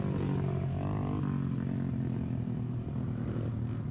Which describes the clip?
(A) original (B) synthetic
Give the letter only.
A